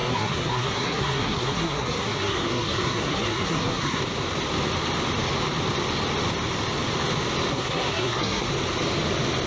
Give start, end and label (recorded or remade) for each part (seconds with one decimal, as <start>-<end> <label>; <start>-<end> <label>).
0.0-4.0 remade; 4.0-7.5 recorded; 7.5-8.5 remade; 8.5-9.5 recorded